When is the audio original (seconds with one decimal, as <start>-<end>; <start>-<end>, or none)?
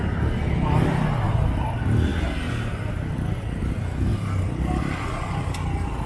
0.0-6.1